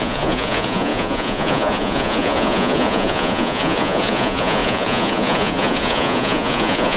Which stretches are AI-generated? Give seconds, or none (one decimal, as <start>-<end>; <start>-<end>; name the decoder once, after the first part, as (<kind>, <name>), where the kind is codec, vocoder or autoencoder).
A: 0.0-7.0 (vocoder, Vocos)